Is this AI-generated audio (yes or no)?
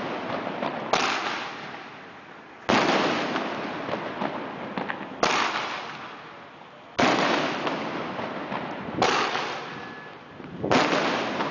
no